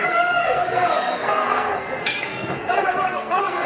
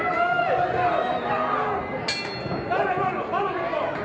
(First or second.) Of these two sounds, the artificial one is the first